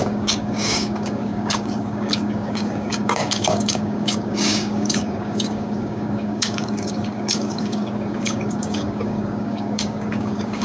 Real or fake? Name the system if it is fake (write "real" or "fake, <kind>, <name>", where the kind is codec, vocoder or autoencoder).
fake, codec, DAC